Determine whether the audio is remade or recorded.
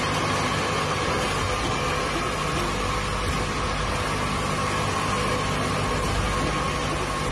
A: recorded